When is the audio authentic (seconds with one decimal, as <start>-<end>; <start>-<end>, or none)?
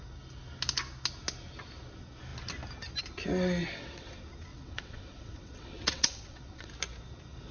0.0-3.6; 4.1-4.5; 6.7-7.5